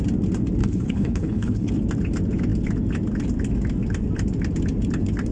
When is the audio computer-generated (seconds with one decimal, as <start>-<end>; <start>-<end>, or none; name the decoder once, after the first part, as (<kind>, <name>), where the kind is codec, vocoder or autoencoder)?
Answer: 0.6-1.7 (codec, HILCodec)